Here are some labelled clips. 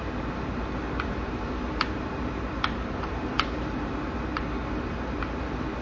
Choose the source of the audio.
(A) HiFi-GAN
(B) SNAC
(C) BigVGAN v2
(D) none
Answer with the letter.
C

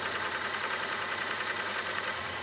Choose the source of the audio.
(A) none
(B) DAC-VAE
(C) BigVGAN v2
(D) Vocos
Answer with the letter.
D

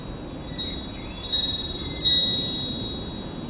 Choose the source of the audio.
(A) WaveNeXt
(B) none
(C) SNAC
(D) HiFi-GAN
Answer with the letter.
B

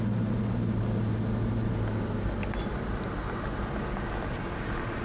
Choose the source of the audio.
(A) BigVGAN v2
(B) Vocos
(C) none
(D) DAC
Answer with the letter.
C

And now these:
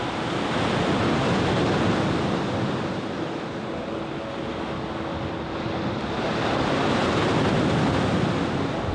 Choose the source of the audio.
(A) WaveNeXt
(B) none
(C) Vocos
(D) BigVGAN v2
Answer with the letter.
B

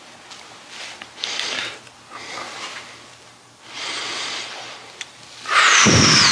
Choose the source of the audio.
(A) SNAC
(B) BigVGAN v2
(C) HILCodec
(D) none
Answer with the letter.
D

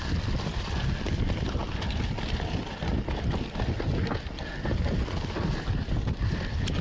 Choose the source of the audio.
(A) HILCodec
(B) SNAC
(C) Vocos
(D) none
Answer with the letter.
D